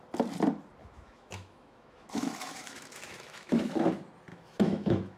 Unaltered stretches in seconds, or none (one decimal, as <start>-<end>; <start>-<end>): 0.0-0.8; 3.9-4.3